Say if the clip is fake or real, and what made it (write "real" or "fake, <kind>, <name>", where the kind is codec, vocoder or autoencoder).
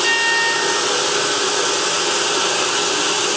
real